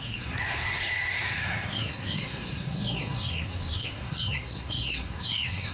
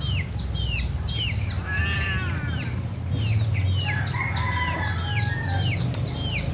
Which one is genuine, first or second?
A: second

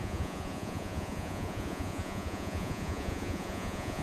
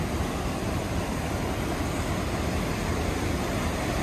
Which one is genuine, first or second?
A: second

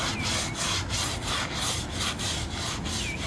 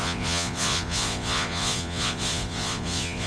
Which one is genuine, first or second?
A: first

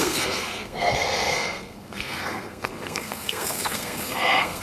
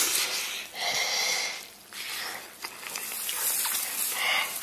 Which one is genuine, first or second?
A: second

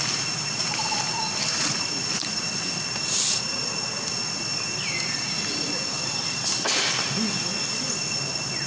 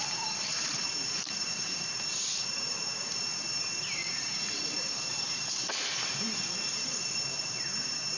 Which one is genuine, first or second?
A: first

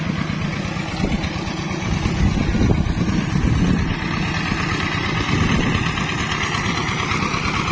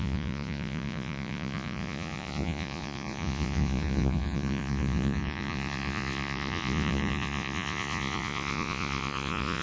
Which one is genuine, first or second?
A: first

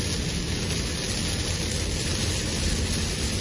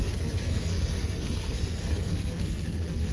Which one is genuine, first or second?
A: first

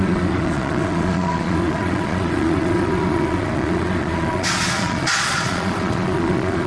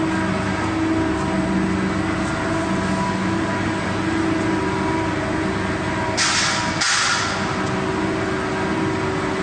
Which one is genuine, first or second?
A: second